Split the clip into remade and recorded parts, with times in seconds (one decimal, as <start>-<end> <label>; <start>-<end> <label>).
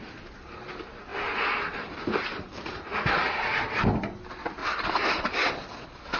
0.0-4.6 recorded; 4.6-5.5 remade; 5.5-6.2 recorded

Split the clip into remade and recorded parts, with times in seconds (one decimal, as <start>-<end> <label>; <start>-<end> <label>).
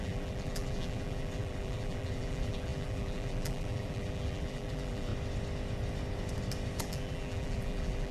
0.0-5.1 remade; 5.1-6.8 recorded; 6.8-8.1 remade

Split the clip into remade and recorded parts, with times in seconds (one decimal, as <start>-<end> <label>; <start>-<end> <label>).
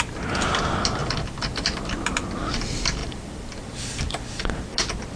0.0-1.0 recorded; 1.0-1.8 remade; 1.8-3.0 recorded; 3.0-4.6 remade; 4.6-5.2 recorded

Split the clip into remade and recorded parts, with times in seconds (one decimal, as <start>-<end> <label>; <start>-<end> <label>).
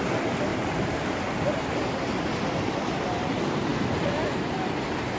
0.0-0.5 recorded; 0.5-1.1 remade; 1.1-5.2 recorded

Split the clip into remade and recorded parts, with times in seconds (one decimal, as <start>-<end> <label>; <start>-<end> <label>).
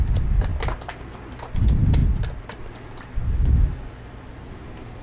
0.0-0.5 remade; 0.5-1.5 recorded; 1.5-2.0 remade; 2.0-2.6 recorded; 2.6-3.4 remade; 3.4-4.5 recorded; 4.5-5.0 remade